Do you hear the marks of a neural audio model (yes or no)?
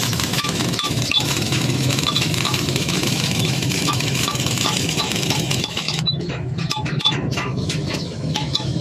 yes